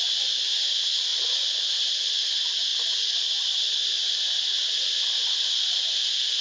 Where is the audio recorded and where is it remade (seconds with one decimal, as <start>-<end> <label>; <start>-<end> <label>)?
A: 0.0-1.1 recorded; 1.1-1.6 remade; 1.6-2.7 recorded; 2.7-5.8 remade; 5.8-6.4 recorded